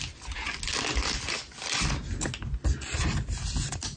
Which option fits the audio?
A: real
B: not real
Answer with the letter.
A